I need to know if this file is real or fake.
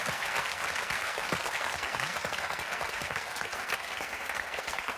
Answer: fake